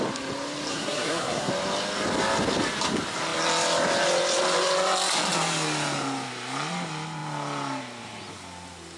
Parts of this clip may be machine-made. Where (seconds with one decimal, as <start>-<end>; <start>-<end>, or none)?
0.7-1.5